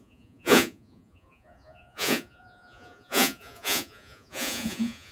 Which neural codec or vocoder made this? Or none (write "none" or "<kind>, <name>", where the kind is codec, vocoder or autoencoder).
vocoder, Vocos